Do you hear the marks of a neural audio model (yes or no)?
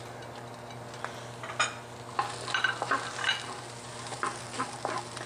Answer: no